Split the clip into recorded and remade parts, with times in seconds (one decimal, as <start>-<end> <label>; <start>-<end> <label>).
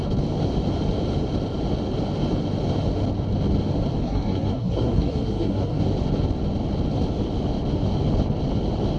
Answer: 0.0-4.0 recorded; 4.0-5.8 remade; 5.8-9.0 recorded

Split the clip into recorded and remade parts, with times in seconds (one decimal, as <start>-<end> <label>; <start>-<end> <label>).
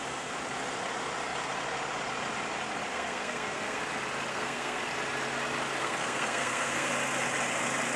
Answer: 0.0-2.9 recorded; 2.9-3.8 remade; 3.8-4.3 recorded; 4.3-4.8 remade; 4.8-5.8 recorded; 5.8-6.9 remade; 6.9-8.0 recorded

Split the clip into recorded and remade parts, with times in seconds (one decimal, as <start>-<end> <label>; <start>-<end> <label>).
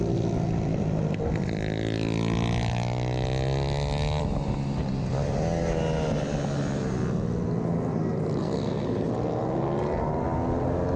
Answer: 0.0-8.4 recorded; 8.4-9.1 remade; 9.1-11.0 recorded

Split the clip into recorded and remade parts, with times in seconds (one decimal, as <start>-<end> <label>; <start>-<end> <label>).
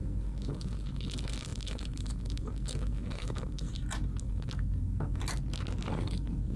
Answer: 0.0-3.7 remade; 3.7-4.2 recorded; 4.2-5.2 remade; 5.2-5.9 recorded; 5.9-6.6 remade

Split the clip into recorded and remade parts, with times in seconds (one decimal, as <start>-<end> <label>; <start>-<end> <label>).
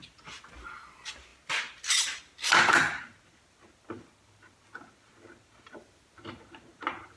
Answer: 0.0-7.2 recorded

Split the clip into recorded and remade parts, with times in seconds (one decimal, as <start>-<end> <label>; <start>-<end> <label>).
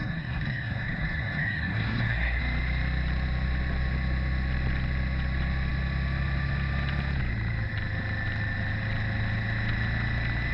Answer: 0.0-2.4 remade; 2.4-10.5 recorded